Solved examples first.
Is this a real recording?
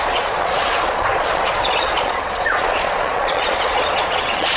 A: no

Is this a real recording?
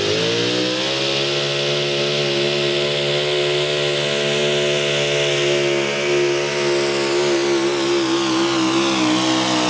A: yes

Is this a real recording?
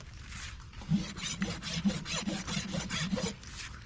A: yes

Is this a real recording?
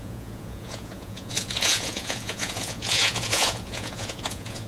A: no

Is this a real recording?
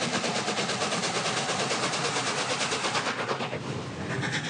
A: yes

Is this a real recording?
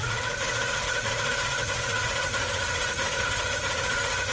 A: no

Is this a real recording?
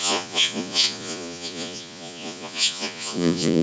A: no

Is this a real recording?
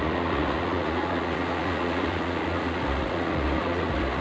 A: no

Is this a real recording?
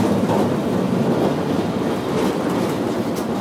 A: yes